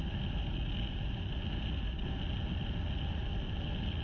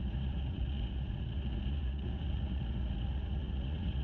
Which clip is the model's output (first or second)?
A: second